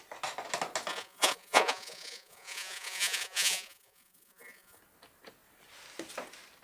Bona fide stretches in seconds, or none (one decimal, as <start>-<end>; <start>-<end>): 0.0-0.9; 4.8-6.6

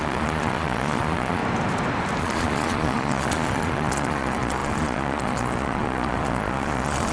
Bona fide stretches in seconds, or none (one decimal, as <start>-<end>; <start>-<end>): 1.4-2.2

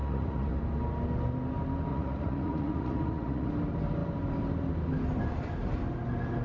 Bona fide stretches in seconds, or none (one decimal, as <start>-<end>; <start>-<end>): 0.6-1.9; 3.5-6.4

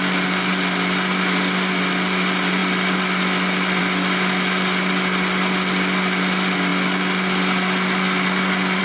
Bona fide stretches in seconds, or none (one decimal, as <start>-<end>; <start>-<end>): 0.0-8.8

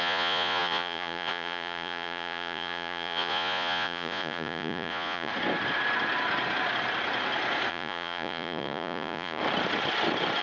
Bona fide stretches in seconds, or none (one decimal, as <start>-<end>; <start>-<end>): 5.3-7.7; 9.4-10.4

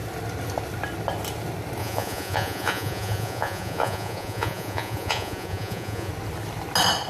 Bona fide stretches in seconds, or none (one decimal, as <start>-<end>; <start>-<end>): 0.0-1.8; 6.1-7.1

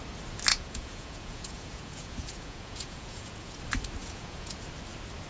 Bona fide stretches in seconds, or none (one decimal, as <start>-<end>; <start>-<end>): 0.0-0.5; 3.6-4.0; 4.6-5.3